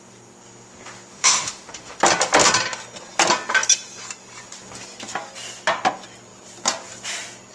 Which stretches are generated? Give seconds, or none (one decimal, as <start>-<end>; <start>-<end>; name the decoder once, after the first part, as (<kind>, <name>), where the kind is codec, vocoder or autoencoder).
1.1-2.0 (autoencoder, DAC-VAE)